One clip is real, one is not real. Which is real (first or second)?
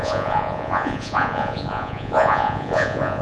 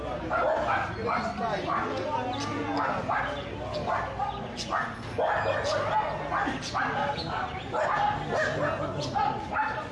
second